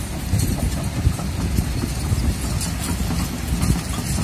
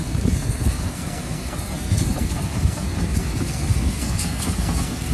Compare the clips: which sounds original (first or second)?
first